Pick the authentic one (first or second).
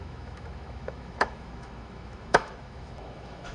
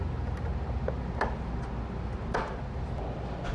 second